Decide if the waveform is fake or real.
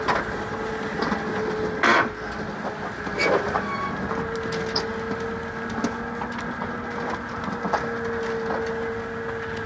real